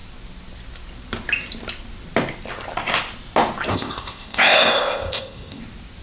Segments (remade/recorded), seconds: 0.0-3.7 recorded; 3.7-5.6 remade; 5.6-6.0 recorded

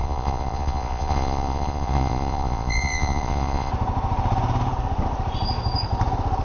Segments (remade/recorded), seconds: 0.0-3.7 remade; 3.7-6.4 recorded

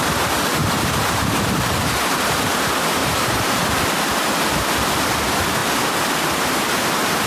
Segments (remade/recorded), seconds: 0.0-0.6 recorded; 0.6-1.4 remade; 1.4-3.0 recorded; 3.0-3.8 remade; 3.8-7.3 recorded

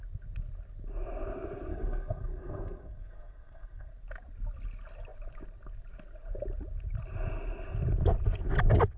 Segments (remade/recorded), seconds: 0.0-1.7 recorded; 1.7-3.9 remade; 3.9-9.0 recorded